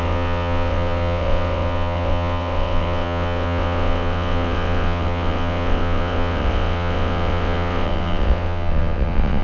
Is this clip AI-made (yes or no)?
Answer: yes